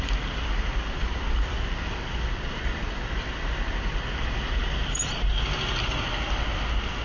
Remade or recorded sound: recorded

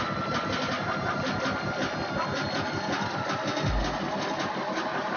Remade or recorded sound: recorded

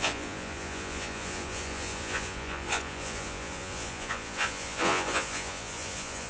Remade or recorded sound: remade